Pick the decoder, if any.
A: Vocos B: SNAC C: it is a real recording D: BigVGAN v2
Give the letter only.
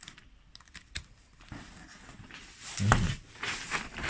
C